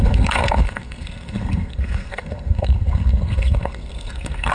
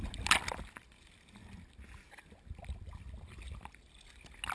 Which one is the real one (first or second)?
second